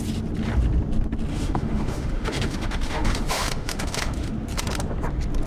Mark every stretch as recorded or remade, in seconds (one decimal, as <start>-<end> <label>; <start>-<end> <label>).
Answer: 0.0-1.3 recorded; 1.3-4.3 remade; 4.3-5.5 recorded